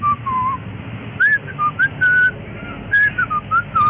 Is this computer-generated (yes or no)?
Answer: no